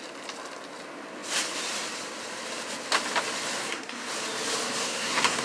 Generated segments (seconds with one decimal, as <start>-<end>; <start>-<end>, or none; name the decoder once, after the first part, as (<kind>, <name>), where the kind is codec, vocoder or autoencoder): 3.6-4.1 (codec, SNAC); 4.8-5.4